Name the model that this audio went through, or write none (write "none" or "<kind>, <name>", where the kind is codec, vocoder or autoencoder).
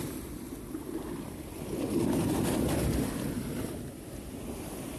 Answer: none